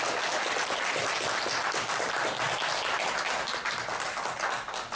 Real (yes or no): yes